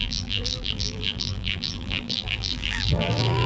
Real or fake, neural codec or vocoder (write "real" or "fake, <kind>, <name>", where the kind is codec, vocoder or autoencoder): fake, vocoder, BigVGAN v2